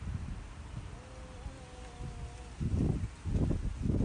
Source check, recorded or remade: recorded